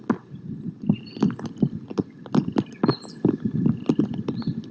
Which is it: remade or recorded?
recorded